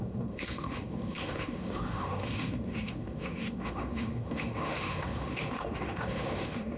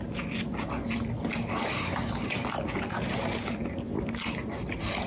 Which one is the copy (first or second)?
first